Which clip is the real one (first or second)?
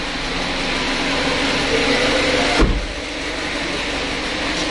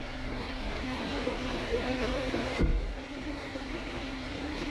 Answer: first